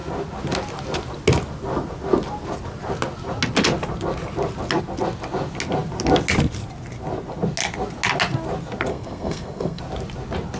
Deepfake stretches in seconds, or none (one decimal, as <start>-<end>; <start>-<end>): 8.9-9.8